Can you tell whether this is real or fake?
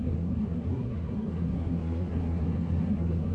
fake